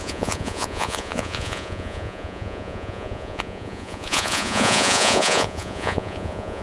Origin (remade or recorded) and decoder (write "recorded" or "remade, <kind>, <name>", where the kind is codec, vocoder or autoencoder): remade, vocoder, Vocos